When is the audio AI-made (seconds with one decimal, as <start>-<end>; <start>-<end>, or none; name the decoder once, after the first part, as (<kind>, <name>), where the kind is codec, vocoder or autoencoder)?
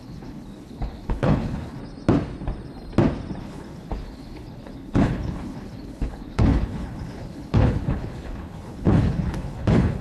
0.0-1.8 (codec, HILCodec); 3.4-10.0